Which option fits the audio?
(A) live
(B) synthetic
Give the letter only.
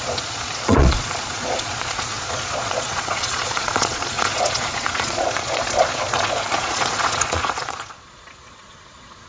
B